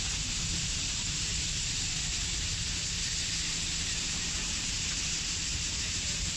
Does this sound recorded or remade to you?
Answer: remade